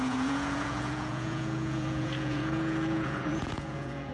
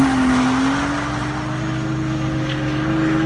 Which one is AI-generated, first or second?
first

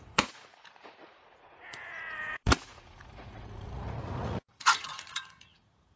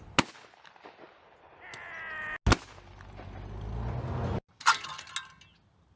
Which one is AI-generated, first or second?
first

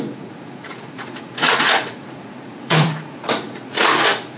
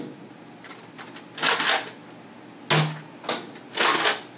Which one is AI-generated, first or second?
first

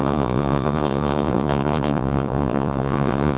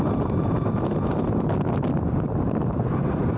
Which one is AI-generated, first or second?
first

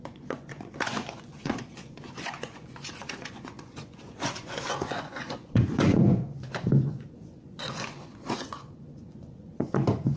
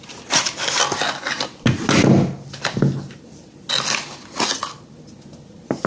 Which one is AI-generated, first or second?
first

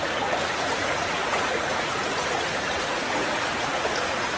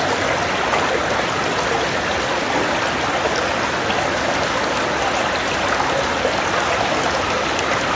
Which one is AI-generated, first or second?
first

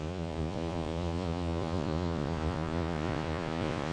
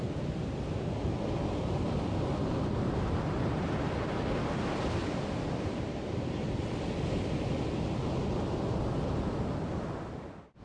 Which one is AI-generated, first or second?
first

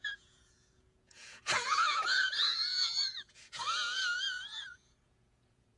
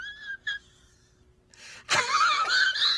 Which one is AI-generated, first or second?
first